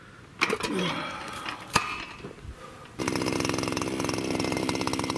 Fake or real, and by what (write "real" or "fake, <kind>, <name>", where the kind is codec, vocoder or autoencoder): real